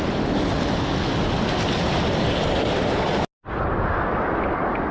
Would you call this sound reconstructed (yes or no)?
no